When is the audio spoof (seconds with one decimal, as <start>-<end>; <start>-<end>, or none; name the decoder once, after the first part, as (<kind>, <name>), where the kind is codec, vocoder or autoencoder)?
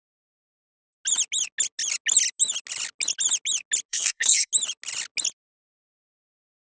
3.9-4.5 (codec, SNAC)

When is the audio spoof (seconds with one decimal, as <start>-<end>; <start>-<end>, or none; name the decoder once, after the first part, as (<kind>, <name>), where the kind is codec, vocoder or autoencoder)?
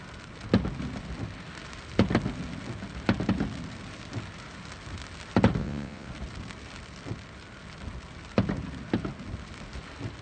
5.6-6.1 (vocoder, WaveNeXt)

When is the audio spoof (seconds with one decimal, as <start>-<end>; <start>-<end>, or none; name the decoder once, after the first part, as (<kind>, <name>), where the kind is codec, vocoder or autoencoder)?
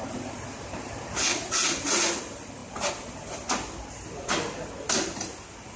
1.3-2.2 (vocoder, Vocos)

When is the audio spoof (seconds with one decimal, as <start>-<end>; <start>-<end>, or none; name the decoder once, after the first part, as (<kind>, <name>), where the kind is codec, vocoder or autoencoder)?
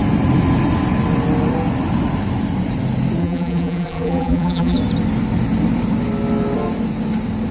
3.2-4.8 (vocoder, BigVGAN v2)